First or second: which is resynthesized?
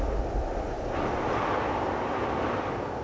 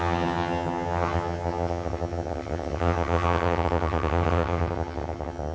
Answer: second